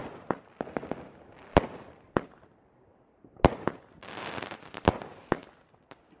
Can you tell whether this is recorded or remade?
recorded